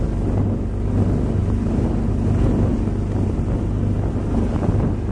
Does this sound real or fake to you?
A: real